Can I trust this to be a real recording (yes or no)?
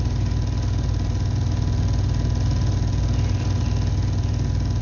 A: yes